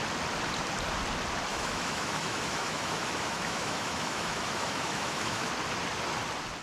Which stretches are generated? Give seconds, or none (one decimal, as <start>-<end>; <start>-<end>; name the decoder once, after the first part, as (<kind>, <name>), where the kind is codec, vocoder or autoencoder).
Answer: 1.5-5.5 (autoencoder, DAC-VAE)